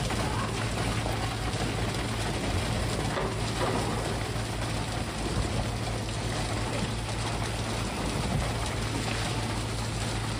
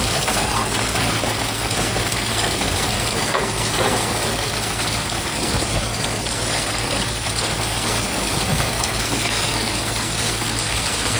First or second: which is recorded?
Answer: first